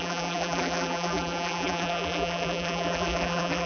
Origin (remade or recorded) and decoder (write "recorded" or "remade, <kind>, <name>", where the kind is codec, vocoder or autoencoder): remade, vocoder, BigVGAN v2